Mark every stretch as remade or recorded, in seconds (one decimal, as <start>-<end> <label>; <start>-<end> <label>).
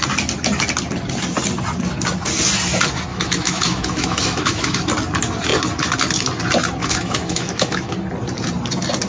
0.0-3.1 recorded; 3.1-4.8 remade; 4.8-6.8 recorded; 6.8-7.9 remade; 7.9-9.1 recorded